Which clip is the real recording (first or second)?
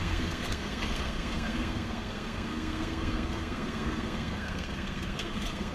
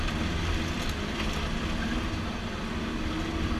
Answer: second